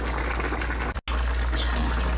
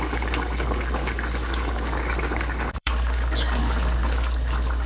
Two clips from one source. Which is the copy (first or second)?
second